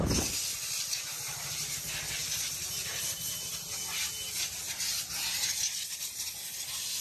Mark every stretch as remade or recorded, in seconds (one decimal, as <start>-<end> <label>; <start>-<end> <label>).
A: 0.0-0.5 recorded; 0.5-1.5 remade; 1.5-7.0 recorded